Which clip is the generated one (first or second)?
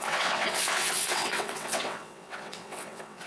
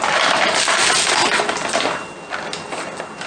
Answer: first